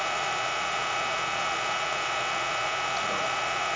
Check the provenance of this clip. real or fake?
fake